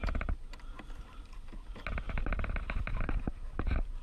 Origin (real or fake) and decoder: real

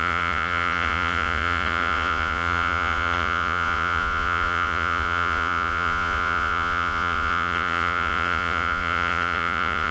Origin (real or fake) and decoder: fake, vocoder, Vocos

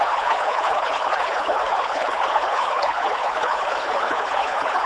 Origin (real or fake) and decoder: fake, codec, HILCodec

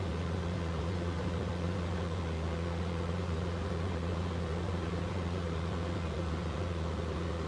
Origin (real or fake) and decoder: fake, vocoder, Vocos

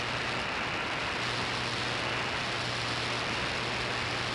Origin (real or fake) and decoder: real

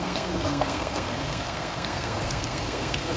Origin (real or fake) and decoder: fake, codec, SNAC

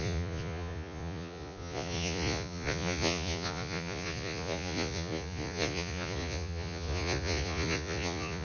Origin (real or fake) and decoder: fake, vocoder, Vocos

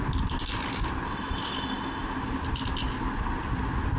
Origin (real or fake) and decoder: real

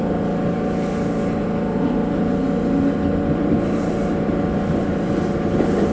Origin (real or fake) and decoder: real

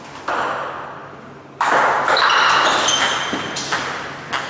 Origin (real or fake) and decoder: real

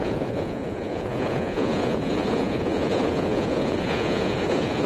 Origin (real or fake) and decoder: fake, vocoder, Vocos